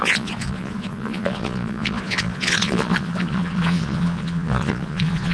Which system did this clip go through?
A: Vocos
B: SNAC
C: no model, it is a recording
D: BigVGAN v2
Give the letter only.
A